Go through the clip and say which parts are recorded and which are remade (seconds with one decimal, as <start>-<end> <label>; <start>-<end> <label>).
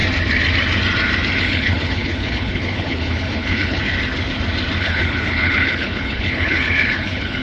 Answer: 0.0-1.4 recorded; 1.4-3.8 remade; 3.8-4.8 recorded; 4.8-7.4 remade